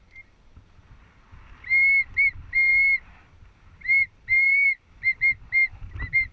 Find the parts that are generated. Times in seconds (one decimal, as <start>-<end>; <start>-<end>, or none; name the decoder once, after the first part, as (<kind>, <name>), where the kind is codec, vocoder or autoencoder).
none